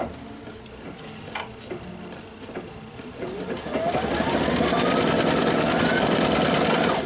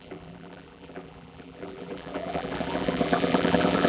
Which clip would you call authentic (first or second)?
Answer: first